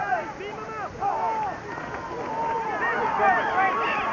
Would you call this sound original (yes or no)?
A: yes